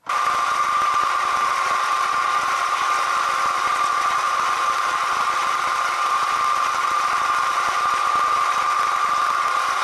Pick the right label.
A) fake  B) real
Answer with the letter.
B